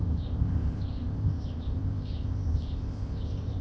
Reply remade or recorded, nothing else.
remade